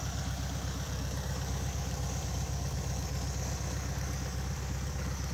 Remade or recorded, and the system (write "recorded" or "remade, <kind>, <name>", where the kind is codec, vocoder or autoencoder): remade, codec, DAC